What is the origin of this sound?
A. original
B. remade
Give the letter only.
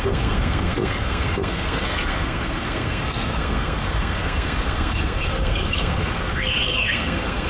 B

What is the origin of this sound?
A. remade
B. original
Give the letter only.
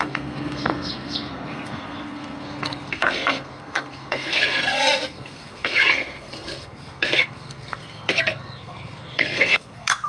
A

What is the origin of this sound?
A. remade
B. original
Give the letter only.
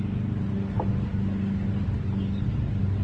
B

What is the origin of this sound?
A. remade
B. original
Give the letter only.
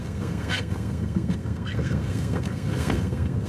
A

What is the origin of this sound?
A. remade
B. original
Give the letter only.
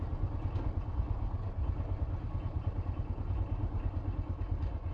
B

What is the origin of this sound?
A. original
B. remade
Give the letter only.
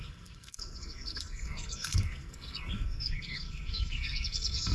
B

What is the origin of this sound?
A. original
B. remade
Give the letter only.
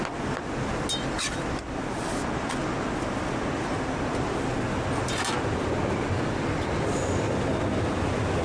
A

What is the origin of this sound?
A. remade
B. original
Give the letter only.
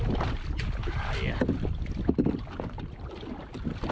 B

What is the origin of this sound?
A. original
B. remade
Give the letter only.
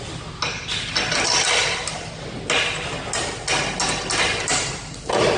A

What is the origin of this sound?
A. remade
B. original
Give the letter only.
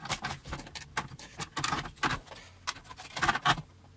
B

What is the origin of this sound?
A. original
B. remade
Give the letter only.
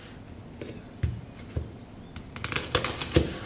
A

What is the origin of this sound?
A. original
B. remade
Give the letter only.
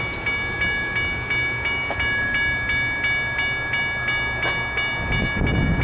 A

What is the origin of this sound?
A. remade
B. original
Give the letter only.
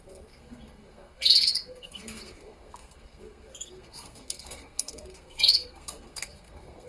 A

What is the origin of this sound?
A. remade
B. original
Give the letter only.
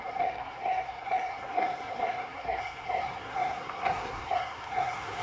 A